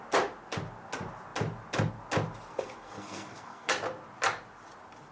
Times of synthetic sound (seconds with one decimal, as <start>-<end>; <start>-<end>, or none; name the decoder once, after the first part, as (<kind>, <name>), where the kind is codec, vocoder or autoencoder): 2.5-3.7 (codec, SNAC)